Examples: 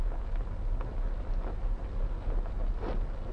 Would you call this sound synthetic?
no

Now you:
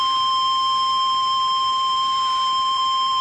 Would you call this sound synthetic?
yes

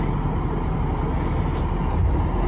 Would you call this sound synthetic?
no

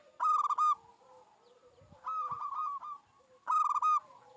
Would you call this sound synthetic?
no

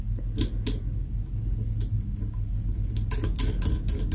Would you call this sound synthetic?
no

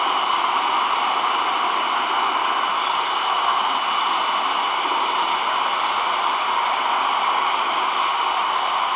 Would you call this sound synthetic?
no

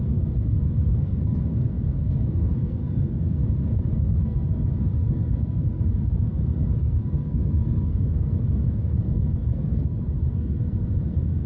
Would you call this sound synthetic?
yes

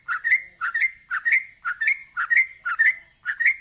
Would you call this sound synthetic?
no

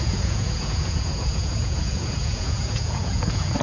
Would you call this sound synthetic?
yes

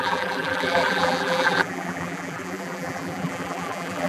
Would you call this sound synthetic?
yes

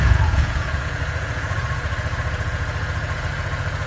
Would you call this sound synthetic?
yes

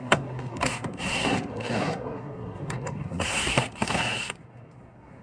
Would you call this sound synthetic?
yes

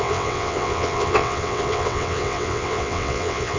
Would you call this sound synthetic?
yes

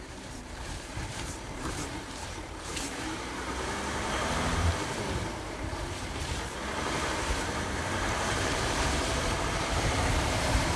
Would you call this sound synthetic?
yes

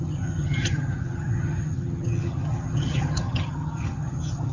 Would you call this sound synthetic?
yes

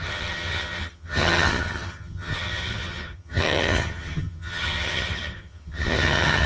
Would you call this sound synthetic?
yes